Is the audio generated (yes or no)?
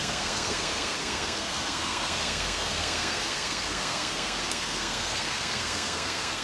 yes